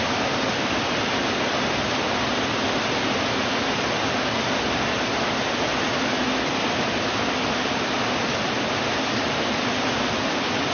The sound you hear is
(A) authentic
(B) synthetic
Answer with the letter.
A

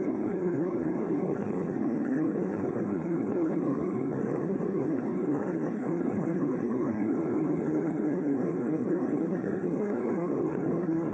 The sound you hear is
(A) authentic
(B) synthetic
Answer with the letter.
B